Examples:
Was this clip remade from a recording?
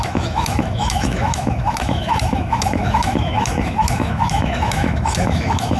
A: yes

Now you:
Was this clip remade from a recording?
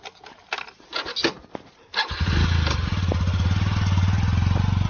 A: no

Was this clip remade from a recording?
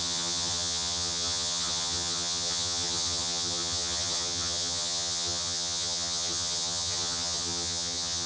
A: yes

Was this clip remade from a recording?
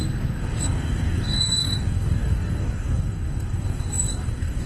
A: yes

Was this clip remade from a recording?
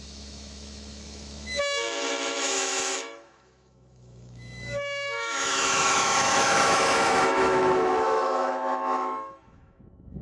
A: yes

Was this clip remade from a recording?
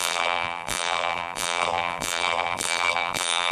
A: yes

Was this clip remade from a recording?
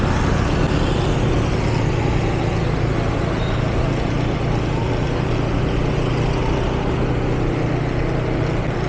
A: no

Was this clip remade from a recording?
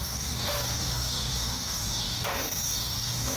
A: yes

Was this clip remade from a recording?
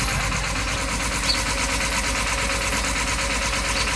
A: no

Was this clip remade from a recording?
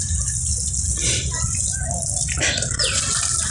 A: no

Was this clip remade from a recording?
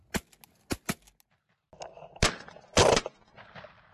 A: no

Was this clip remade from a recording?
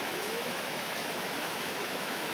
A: yes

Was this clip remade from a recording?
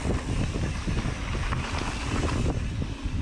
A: no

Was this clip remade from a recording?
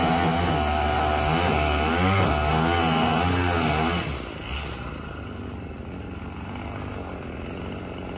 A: no